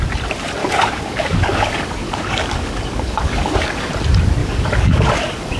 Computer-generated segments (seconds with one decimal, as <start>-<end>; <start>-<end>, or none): 0.6-3.9; 4.4-5.6